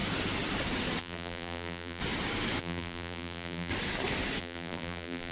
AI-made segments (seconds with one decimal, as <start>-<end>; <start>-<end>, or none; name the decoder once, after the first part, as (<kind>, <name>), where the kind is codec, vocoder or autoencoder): 1.0-2.0 (vocoder, BigVGAN v2); 2.6-3.7; 4.4-5.3